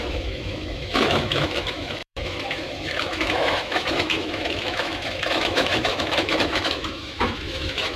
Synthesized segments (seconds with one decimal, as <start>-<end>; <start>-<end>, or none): 0.0-8.0